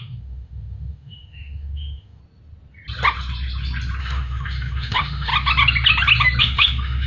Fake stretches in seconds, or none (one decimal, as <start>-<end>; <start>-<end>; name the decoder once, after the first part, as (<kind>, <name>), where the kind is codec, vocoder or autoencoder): 0.0-2.2 (autoencoder, DAC-VAE); 4.0-5.3; 6.4-7.1